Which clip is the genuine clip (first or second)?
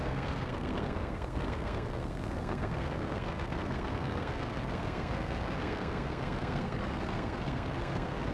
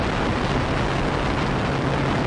second